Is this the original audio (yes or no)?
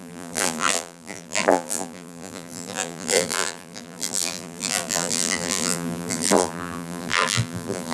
no